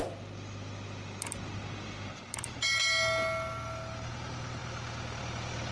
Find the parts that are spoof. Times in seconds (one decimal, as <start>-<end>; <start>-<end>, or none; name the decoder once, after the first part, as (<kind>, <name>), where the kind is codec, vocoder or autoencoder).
none